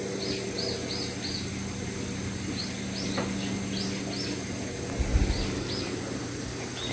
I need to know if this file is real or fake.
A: real